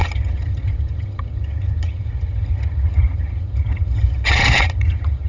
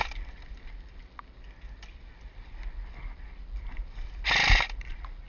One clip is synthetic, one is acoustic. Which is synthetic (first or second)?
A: first